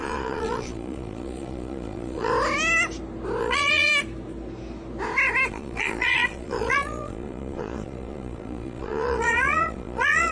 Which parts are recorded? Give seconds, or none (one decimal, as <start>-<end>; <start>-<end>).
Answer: 2.3-3.4; 3.9-5.5